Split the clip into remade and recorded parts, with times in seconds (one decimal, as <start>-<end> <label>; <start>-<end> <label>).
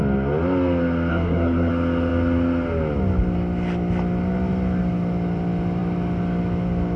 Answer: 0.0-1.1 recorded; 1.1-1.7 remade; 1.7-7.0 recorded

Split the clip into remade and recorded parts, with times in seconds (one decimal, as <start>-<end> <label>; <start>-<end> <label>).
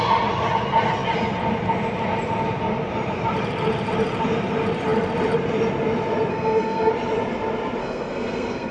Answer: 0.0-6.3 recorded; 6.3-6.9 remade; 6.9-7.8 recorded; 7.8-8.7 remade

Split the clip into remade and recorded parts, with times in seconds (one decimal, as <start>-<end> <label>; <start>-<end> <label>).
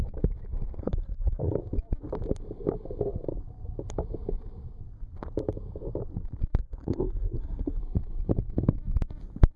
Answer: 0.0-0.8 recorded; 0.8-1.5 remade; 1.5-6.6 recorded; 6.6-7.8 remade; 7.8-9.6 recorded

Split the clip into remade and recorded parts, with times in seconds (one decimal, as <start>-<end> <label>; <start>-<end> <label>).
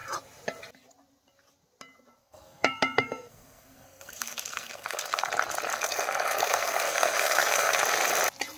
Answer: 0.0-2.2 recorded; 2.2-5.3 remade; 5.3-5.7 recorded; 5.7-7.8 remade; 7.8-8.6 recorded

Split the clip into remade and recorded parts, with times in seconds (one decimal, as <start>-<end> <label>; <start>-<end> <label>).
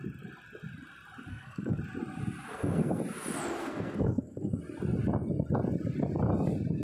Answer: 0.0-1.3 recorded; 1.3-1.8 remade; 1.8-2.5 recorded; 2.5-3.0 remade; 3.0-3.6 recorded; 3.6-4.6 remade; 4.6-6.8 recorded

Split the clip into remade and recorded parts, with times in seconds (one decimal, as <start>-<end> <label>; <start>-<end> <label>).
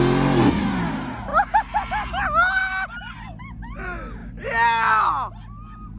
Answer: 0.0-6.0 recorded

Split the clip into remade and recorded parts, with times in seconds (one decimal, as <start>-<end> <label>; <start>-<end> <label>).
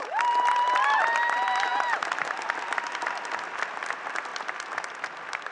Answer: 0.0-5.5 recorded